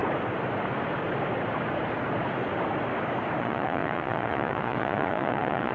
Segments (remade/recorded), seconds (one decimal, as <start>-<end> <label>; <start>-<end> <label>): 0.0-3.4 recorded; 3.4-5.7 remade